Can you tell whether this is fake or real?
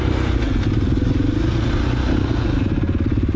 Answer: real